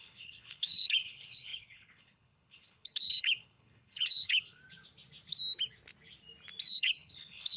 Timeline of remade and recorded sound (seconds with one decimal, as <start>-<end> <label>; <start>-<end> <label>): 0.0-4.6 remade; 4.6-6.7 recorded; 6.7-7.6 remade